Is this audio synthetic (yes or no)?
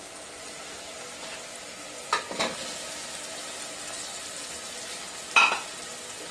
no